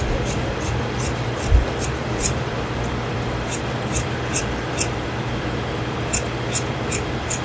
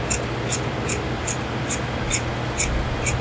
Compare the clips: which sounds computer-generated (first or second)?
first